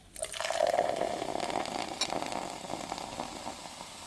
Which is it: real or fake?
real